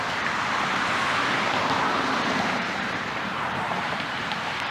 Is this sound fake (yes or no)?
yes